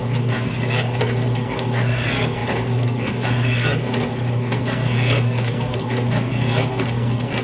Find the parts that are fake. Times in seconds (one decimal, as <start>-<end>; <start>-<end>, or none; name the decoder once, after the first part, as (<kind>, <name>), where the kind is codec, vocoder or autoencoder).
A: 0.0-7.4 (codec, SNAC)

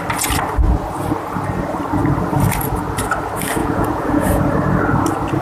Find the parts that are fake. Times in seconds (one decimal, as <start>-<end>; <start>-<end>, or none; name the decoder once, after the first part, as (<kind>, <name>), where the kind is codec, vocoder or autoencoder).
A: 3.6-4.4 (vocoder, Vocos)

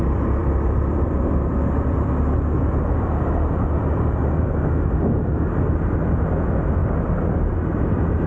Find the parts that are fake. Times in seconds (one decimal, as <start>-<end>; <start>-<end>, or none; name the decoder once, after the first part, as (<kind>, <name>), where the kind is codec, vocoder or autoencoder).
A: 0.4-4.2 (vocoder, BigVGAN v2); 6.8-8.3

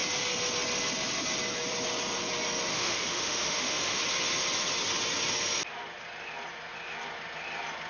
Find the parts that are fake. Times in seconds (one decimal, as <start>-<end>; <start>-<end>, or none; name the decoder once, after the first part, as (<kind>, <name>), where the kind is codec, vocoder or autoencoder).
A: 2.7-4.0 (autoencoder, DAC-VAE)

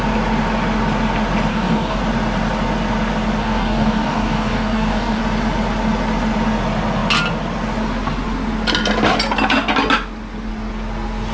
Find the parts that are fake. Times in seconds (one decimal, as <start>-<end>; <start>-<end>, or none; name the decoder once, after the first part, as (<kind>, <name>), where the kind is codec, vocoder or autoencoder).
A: 1.5-2.0 (codec, DAC); 3.4-5.2